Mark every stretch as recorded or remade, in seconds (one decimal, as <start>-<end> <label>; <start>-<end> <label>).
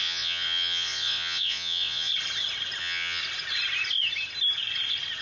0.0-2.1 remade; 2.1-2.8 recorded; 2.8-3.2 remade; 3.2-5.2 recorded